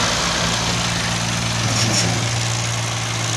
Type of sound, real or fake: real